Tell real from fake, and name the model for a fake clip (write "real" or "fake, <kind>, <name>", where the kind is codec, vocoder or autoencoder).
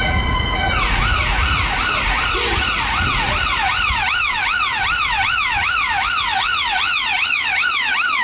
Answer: fake, vocoder, Vocos